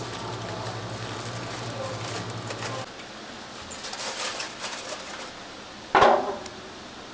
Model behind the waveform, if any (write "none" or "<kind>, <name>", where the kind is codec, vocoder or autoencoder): none